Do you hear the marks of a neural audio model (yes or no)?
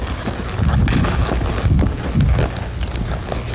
no